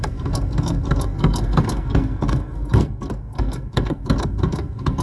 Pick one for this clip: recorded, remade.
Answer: remade